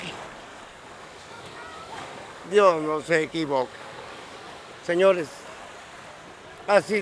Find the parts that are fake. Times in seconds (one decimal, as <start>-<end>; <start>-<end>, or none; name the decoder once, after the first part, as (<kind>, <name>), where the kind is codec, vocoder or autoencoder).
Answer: 0.5-4.7 (codec, DAC)